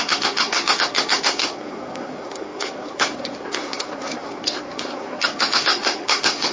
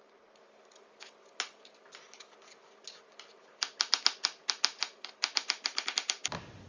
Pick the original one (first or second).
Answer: second